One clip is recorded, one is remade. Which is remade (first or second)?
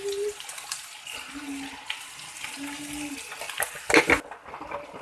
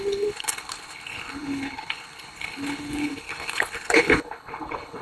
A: second